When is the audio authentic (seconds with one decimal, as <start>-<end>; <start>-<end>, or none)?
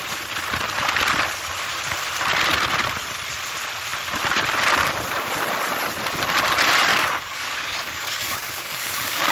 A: 0.0-6.9